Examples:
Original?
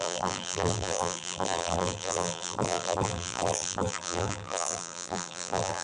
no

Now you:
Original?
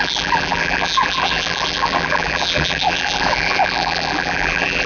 no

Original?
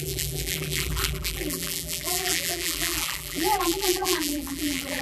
no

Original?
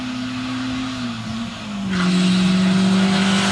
yes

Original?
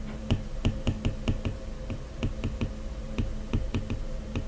yes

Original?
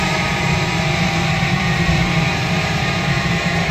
no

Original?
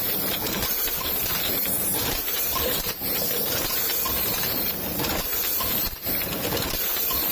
no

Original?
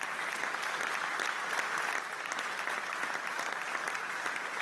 yes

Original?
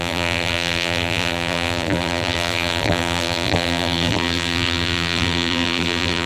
no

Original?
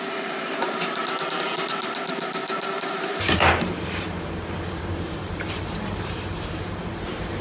no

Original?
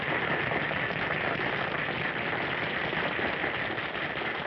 yes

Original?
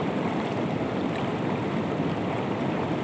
no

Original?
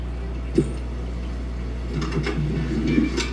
yes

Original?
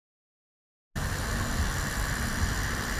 yes